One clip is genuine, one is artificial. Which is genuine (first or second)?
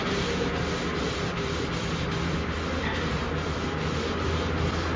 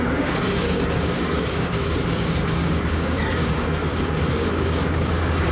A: first